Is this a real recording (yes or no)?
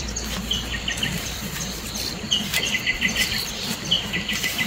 no